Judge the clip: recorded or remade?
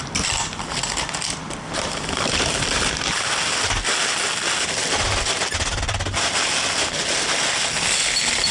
recorded